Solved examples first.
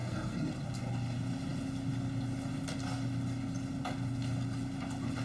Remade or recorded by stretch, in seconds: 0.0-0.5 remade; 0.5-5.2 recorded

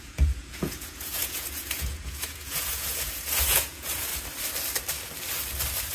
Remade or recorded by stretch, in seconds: 0.0-4.1 remade; 4.1-5.9 recorded

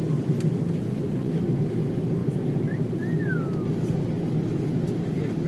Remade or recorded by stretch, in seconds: 0.0-0.9 recorded; 0.9-1.6 remade; 1.6-5.5 recorded

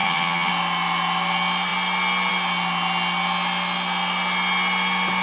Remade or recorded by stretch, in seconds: 0.0-0.5 remade; 0.5-5.2 recorded

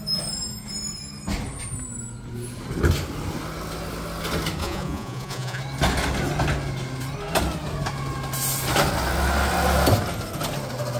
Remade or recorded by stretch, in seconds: 0.0-4.6 recorded; 4.6-5.6 remade; 5.6-11.0 recorded

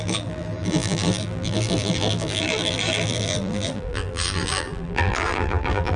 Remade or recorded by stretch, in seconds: 0.0-6.0 remade

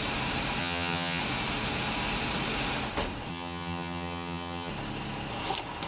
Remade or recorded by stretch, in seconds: 0.0-0.6 recorded; 0.6-1.2 remade; 1.2-3.3 recorded; 3.3-4.7 remade; 4.7-5.9 recorded